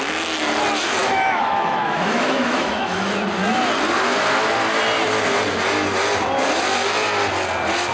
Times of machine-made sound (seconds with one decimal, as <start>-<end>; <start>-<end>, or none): 1.0-3.1